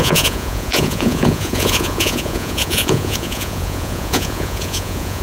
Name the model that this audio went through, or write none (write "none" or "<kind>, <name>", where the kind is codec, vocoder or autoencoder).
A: vocoder, Vocos